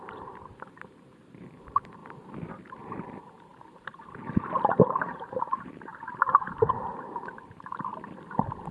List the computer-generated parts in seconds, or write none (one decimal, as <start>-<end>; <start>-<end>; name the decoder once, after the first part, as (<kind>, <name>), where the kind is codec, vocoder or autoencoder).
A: 0.0-2.0 (vocoder, BigVGAN v2); 2.5-5.9; 6.7-7.9